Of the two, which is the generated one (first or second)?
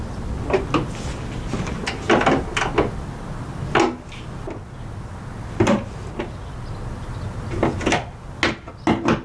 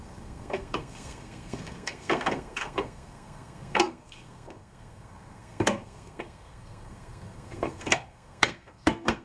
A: second